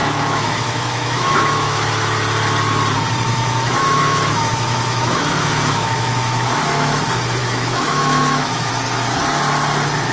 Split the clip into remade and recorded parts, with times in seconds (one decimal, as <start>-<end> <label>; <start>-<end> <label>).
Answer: 0.0-1.9 remade; 1.9-3.3 recorded; 3.3-7.0 remade; 7.0-7.4 recorded; 7.4-8.7 remade; 8.7-10.1 recorded